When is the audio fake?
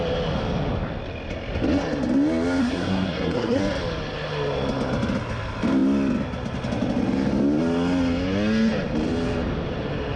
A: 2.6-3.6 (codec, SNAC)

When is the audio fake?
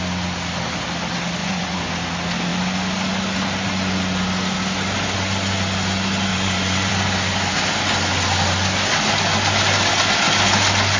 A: 1.4-1.9 (vocoder, Vocos); 6.3-6.9